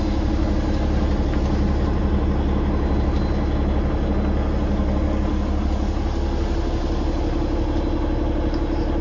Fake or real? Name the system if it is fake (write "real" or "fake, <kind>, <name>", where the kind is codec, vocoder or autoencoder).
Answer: real